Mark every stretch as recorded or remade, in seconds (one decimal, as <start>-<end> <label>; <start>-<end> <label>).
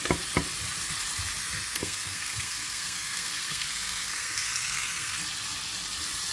0.0-1.4 recorded; 1.4-5.2 remade; 5.2-6.3 recorded